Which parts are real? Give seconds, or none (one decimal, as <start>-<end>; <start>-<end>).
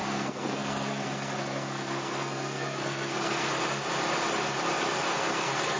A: 3.5-4.9